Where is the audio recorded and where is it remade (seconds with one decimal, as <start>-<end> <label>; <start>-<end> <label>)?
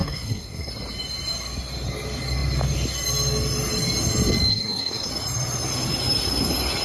0.0-0.7 remade; 0.7-4.5 recorded; 4.5-5.1 remade; 5.1-6.8 recorded